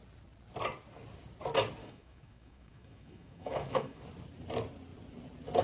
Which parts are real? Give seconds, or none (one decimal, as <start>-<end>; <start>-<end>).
0.0-1.8; 4.0-5.6